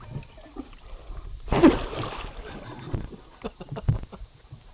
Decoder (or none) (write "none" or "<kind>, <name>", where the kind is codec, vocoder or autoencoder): none